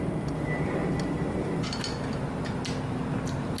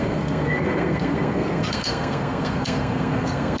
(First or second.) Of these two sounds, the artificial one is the second